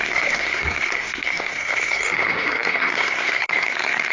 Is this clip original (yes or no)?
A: no